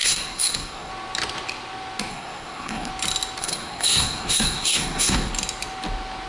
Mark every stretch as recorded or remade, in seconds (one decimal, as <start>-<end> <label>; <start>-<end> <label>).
0.0-0.9 remade; 0.9-2.1 recorded; 2.1-2.9 remade; 2.9-3.4 recorded; 3.4-5.3 remade; 5.3-6.3 recorded